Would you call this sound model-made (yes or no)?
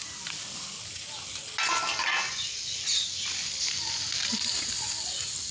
no